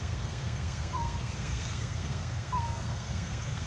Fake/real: fake